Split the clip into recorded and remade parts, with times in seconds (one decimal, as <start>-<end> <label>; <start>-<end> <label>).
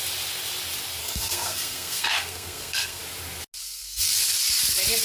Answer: 0.0-1.0 recorded; 1.0-3.0 remade; 3.0-3.6 recorded; 3.6-4.1 remade; 4.1-5.0 recorded